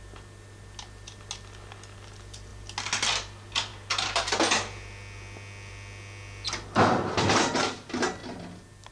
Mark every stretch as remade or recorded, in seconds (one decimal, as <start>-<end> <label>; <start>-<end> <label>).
0.0-8.9 recorded